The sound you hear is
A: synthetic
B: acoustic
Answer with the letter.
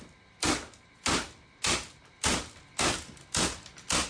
B